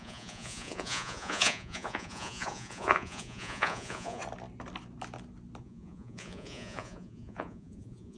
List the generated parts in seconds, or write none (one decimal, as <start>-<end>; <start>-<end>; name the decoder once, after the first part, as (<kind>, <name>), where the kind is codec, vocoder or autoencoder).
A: 0.0-4.2 (vocoder, Vocos); 5.6-8.2